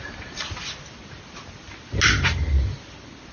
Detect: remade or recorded recorded